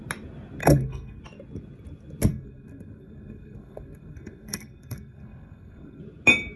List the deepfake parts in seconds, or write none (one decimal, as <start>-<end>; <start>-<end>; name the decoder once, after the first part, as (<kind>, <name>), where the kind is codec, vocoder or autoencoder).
0.6-1.2 (codec, SNAC); 2.3-6.0